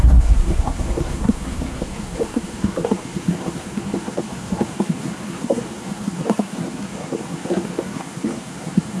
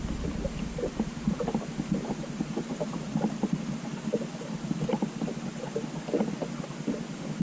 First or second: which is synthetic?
first